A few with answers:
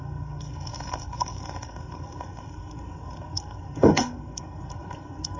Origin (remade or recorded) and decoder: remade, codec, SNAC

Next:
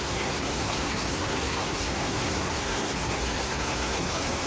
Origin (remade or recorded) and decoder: remade, codec, SNAC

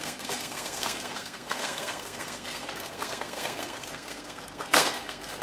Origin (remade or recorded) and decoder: remade, codec, SNAC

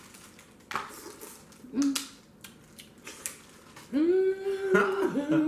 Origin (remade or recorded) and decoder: recorded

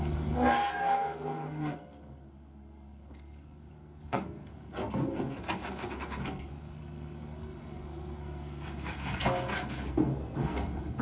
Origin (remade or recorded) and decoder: remade, codec, SNAC